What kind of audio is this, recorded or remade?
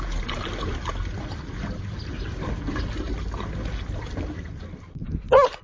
recorded